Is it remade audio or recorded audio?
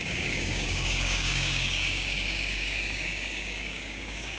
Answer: remade